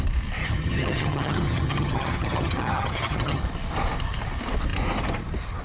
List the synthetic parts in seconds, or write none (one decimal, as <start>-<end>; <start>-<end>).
0.4-3.4